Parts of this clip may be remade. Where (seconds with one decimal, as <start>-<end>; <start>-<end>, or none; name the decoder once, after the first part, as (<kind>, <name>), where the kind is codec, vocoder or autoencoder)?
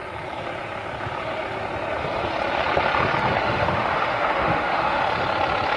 3.3-5.0 (autoencoder, DAC-VAE)